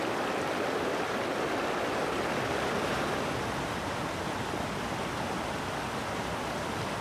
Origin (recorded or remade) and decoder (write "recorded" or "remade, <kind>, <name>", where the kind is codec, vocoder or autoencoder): recorded